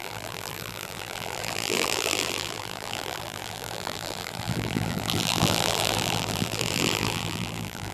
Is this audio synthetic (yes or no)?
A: yes